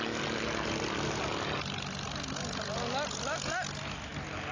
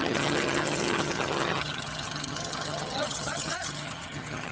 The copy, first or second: second